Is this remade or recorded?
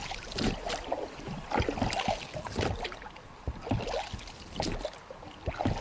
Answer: recorded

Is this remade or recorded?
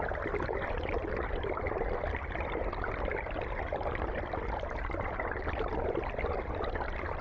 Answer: recorded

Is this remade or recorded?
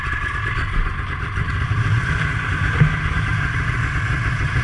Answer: remade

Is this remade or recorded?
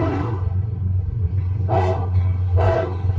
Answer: remade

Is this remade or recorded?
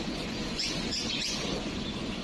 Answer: remade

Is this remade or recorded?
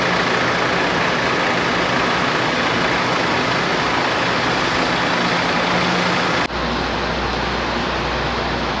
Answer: recorded